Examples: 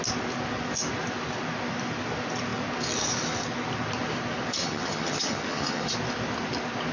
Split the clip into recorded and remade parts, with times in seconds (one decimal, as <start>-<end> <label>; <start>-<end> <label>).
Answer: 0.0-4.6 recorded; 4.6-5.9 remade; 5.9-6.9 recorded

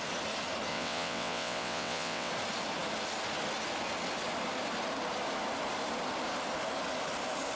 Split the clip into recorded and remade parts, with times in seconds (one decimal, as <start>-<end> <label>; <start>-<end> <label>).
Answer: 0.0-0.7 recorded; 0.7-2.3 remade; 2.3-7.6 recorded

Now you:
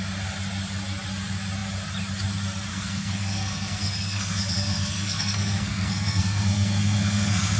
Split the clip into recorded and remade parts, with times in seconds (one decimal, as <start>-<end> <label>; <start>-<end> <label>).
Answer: 0.0-2.7 recorded; 2.7-7.6 remade

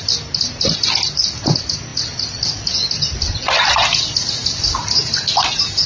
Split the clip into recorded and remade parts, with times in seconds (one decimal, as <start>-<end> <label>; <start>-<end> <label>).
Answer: 0.0-5.9 recorded

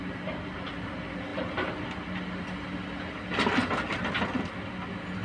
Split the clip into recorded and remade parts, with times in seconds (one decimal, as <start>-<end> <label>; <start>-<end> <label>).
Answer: 0.0-5.2 recorded